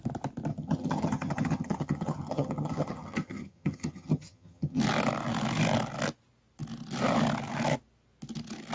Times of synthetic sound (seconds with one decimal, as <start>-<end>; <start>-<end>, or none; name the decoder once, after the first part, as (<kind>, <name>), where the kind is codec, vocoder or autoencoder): 0.5-4.8 (vocoder, HiFi-GAN)